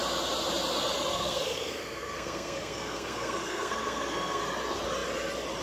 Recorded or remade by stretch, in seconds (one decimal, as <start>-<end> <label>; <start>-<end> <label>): 0.0-1.1 recorded; 1.1-4.4 remade; 4.4-5.6 recorded